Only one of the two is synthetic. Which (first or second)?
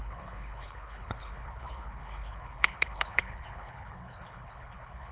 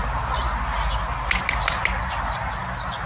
first